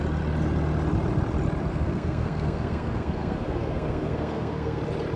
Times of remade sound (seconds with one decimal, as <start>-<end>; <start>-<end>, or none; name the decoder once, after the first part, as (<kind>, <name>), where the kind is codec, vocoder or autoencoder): 1.7-4.8 (codec, SNAC)

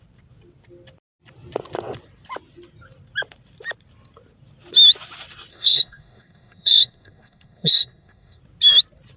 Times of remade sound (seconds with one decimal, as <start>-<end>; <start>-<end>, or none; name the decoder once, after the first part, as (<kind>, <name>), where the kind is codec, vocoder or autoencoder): 5.5-8.4 (codec, SNAC)